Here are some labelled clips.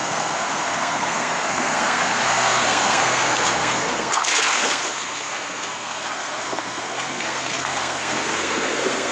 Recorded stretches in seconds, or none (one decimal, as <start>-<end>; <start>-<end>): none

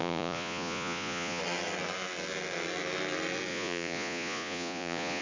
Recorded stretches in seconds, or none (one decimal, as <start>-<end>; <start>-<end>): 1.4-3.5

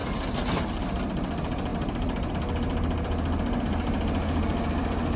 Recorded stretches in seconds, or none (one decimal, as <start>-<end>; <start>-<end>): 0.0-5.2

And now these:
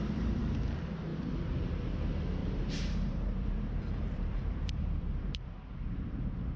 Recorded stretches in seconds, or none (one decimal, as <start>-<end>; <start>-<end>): 0.0-1.1; 1.6-2.4

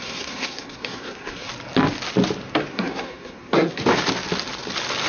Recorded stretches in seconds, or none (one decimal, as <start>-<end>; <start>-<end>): 1.5-2.7; 3.8-5.1